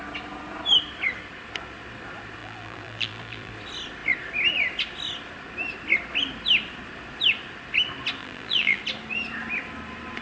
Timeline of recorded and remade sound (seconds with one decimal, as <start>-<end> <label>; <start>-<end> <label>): 0.0-2.4 recorded; 2.4-3.5 remade; 3.5-8.2 recorded; 8.2-8.8 remade; 8.8-10.2 recorded